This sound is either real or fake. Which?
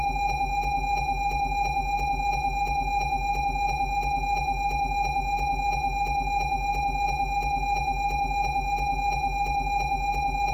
fake